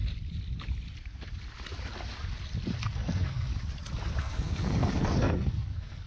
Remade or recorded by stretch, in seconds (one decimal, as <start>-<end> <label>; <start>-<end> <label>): 0.0-2.8 recorded; 2.8-3.5 remade; 3.5-4.2 recorded; 4.2-6.1 remade